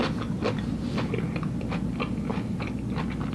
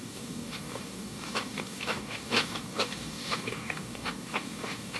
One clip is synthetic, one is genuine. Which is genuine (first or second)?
first